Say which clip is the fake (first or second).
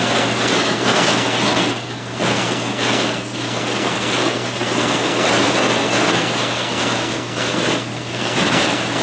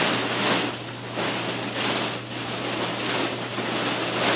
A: first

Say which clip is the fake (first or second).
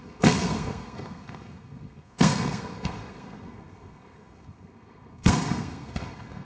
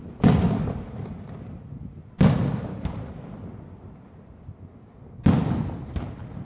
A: first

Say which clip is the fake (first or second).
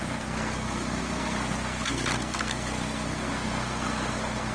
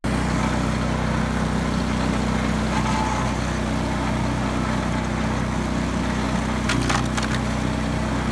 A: first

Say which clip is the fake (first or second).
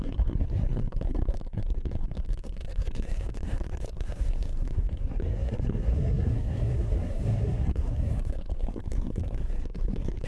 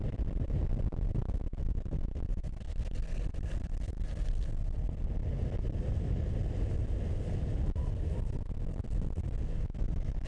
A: first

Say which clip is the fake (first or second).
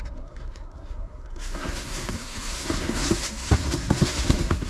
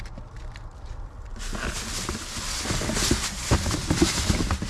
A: first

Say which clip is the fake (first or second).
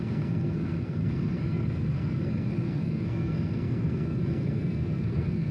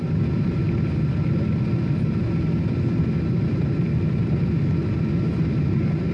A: first